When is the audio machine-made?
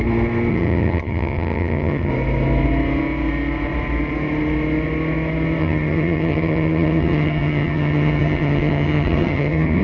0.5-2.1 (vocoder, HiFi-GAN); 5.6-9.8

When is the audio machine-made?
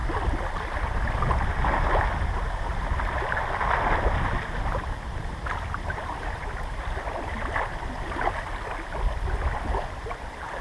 none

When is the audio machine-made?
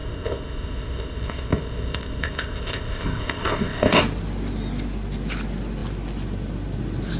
0.0-4.0 (codec, ZipCodec)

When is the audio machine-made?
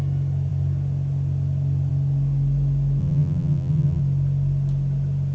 3.0-4.0 (vocoder, BigVGAN v2)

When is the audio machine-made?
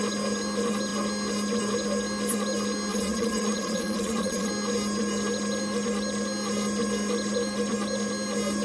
2.9-4.5 (vocoder, Vocos)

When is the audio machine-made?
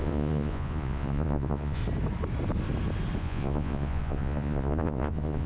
0.0-1.8 (vocoder, Vocos); 3.2-5.5